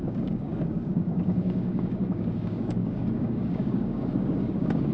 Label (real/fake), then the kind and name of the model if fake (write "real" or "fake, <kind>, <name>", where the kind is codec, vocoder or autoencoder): fake, codec, DAC